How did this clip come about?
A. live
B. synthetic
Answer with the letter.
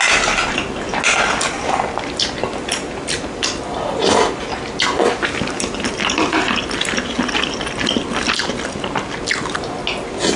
A